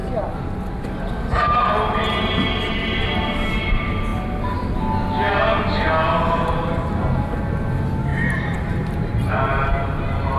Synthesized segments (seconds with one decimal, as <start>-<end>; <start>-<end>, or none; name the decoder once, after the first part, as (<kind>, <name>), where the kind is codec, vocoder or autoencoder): 8.1-9.3 (vocoder, BigVGAN v2)